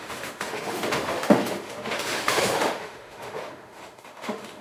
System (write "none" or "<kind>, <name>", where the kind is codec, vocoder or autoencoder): autoencoder, DAC-VAE